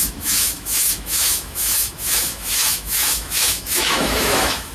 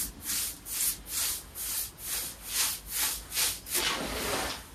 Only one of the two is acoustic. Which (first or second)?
second